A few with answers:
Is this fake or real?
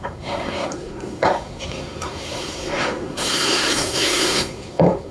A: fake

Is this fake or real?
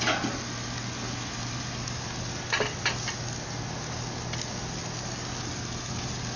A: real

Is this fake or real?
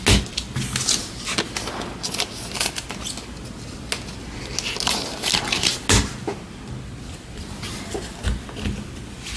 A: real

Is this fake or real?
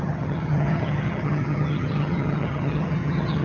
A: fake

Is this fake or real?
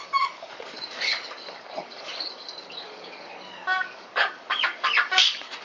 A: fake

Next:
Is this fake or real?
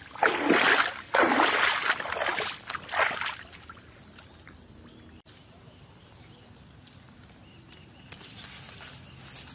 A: real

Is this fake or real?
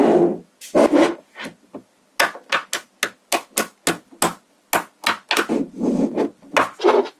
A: real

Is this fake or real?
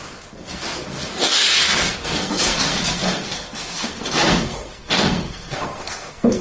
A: fake